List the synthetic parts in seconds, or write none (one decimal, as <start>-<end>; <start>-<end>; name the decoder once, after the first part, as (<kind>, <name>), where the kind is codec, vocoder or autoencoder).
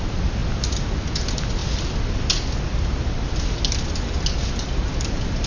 none